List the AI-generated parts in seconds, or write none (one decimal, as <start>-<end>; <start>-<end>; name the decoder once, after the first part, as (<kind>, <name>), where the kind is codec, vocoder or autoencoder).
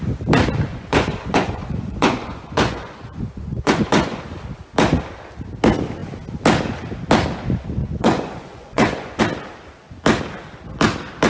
0.7-4.2 (vocoder, Vocos); 7.8-9.2